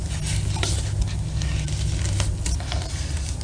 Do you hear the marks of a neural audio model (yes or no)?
no